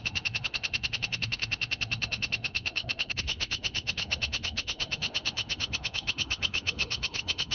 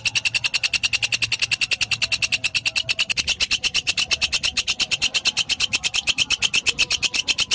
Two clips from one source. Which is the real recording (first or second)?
second